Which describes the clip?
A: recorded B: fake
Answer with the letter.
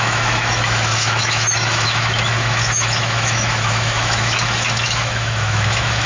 B